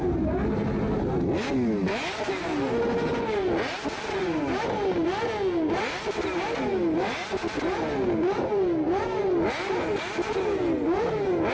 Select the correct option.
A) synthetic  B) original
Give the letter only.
B